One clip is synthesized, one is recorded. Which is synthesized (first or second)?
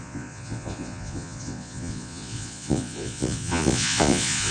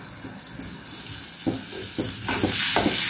first